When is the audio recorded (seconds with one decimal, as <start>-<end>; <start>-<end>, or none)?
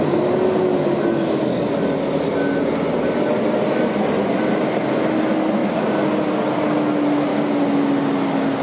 0.0-7.3; 7.9-8.6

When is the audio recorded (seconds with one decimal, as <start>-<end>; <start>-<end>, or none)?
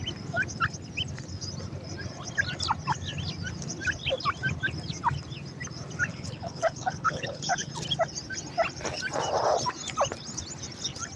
0.0-6.1; 7.7-11.2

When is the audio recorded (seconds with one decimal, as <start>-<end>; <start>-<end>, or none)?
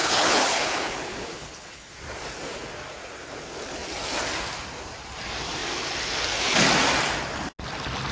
1.9-8.1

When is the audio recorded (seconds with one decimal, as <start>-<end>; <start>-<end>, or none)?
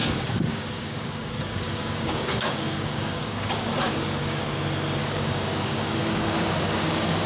4.4-5.0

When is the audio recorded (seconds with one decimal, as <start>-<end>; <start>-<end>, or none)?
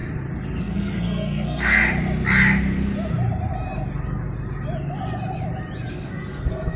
0.0-0.6; 1.8-5.9